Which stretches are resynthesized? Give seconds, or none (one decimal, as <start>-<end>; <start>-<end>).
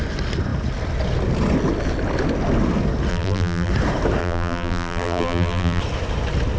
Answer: 3.1-3.7; 4.2-5.8